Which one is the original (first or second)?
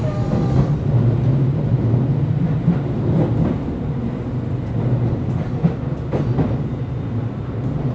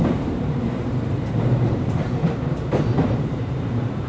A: first